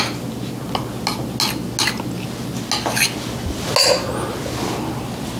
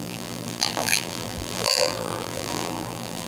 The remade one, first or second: second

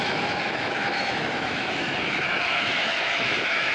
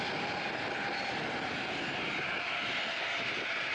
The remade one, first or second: first